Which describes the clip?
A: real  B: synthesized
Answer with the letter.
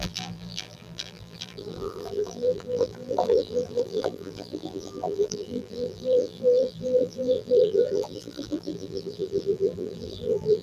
B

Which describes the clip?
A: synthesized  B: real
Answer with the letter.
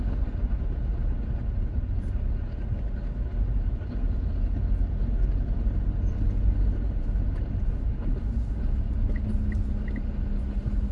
B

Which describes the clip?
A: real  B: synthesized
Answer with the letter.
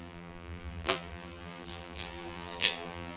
B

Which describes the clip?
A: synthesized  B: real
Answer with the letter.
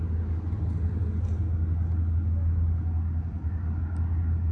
B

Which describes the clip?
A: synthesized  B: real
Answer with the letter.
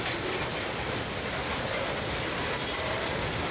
B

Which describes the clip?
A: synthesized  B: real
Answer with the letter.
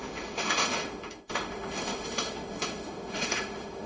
A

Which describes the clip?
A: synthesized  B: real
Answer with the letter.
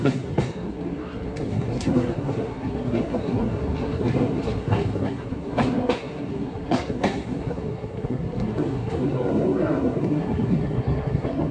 A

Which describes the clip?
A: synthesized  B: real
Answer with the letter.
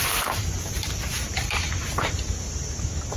A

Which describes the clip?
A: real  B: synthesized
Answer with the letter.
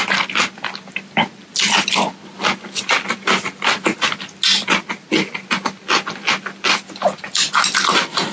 A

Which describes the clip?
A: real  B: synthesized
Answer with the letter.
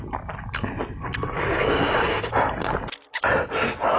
A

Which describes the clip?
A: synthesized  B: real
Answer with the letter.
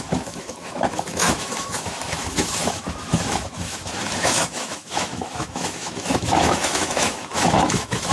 A